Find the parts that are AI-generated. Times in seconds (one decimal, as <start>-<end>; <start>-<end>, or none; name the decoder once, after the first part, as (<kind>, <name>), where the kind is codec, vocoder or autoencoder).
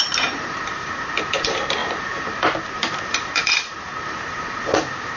0.0-5.2 (vocoder, BigVGAN v2)